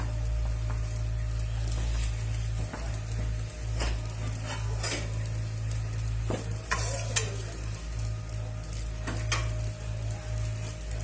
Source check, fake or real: real